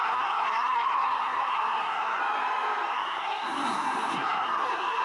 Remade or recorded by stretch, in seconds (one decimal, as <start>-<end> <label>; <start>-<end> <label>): 0.0-2.2 remade; 2.2-2.9 recorded; 2.9-5.0 remade